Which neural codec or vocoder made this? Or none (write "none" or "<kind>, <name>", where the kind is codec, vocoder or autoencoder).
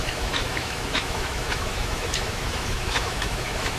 autoencoder, DAC-VAE